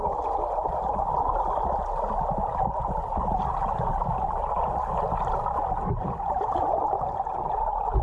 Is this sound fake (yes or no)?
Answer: no